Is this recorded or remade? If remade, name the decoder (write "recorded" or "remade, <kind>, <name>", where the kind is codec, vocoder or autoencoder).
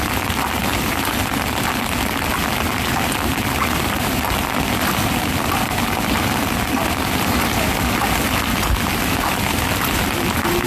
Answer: recorded